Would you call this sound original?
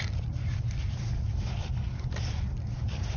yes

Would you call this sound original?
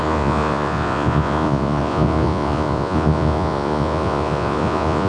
no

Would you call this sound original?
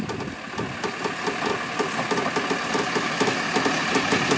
yes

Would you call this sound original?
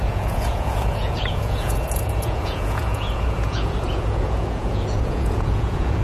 no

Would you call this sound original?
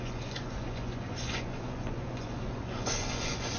no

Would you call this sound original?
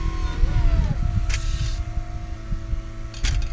yes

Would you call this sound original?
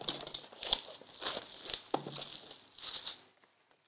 yes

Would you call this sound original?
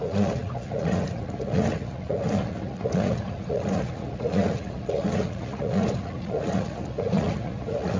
no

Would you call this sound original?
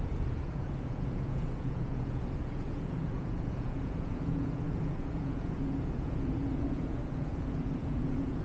no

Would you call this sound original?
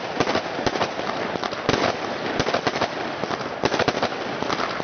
yes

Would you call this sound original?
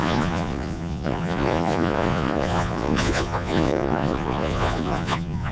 no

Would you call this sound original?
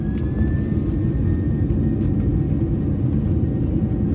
yes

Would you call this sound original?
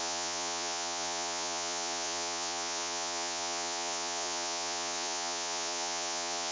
no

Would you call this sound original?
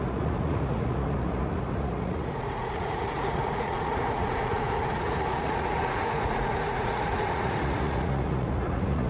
no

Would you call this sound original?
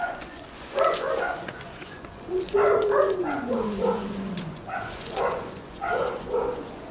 no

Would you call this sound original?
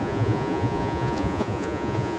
no